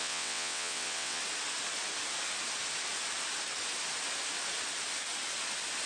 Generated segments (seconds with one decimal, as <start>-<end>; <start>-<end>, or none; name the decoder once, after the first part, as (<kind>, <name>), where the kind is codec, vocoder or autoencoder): 0.0-1.2 (vocoder, WaveNeXt)